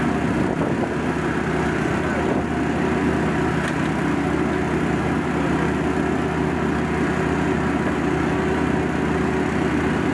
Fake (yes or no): no